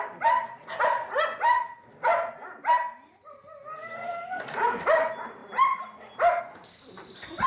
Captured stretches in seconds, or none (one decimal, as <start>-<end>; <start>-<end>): 0.0-7.5

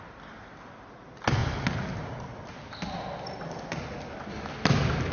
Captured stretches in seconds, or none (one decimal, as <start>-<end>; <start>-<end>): 0.0-5.1